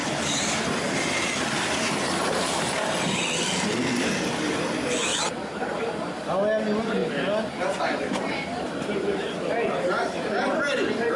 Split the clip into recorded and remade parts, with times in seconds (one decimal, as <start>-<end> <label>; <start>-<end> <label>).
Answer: 0.0-11.2 recorded